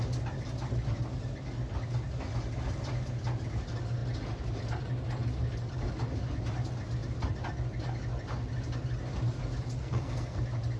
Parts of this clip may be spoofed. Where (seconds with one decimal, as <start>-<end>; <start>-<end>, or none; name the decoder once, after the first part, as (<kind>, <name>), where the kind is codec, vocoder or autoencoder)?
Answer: 9.8-10.4 (codec, SNAC)